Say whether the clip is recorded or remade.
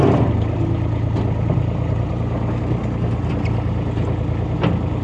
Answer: recorded